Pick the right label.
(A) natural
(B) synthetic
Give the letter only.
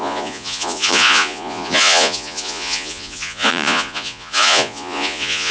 B